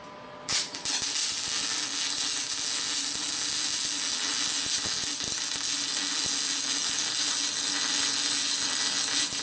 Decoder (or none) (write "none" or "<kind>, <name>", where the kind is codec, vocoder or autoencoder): none